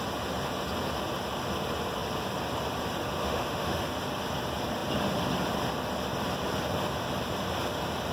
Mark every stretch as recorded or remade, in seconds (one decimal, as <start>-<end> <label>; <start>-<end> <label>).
0.0-3.2 recorded; 3.2-3.8 remade; 3.8-8.1 recorded